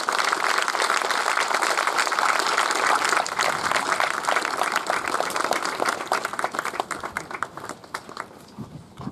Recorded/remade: recorded